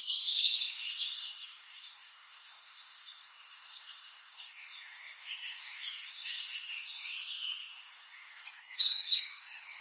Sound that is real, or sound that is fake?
fake